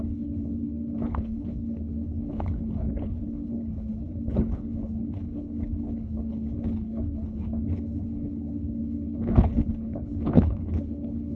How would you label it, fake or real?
fake